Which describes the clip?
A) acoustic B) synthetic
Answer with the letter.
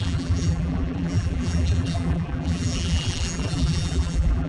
B